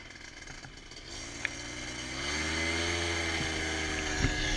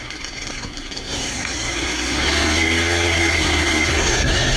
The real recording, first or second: first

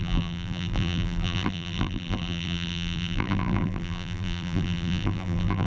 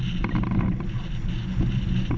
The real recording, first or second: second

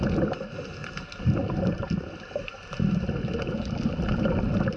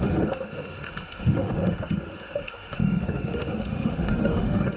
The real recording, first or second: first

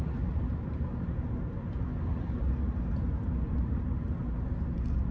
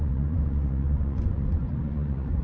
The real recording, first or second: first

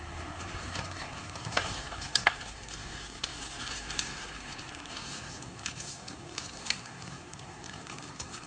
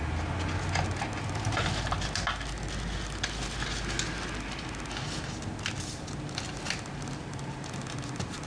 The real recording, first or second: second